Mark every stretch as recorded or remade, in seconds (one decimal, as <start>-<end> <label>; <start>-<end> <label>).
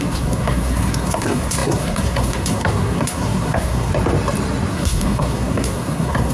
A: 0.0-3.9 remade; 3.9-4.7 recorded; 4.7-6.3 remade